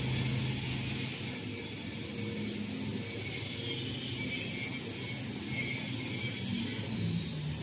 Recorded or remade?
recorded